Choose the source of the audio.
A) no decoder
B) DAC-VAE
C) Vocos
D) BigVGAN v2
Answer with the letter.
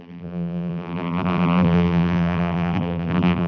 D